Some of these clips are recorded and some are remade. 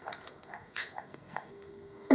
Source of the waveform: remade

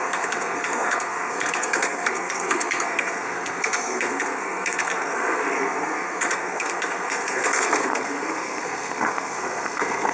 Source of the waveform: remade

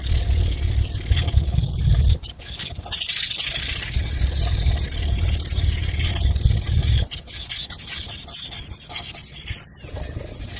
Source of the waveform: recorded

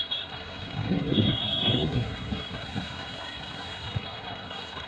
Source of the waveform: remade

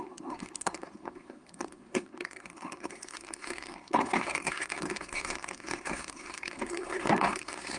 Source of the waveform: remade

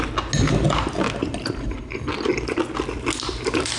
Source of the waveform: recorded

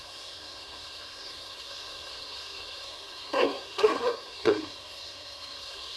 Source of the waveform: remade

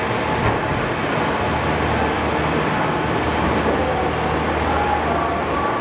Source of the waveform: recorded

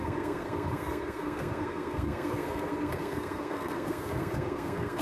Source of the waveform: remade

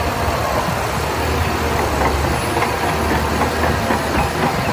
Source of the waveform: recorded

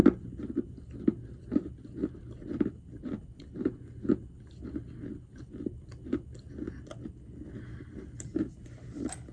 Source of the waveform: recorded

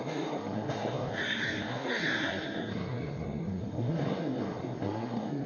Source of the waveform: remade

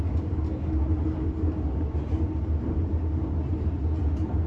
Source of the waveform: recorded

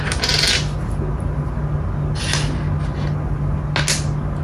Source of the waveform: recorded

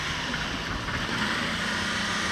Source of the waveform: recorded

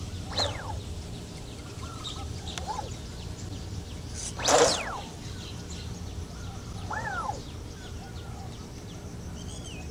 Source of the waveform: recorded